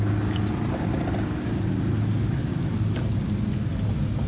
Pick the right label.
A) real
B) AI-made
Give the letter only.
A